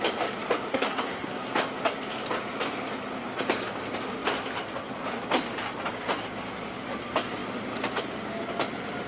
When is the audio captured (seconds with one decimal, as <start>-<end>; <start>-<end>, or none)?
0.0-0.7; 1.5-9.1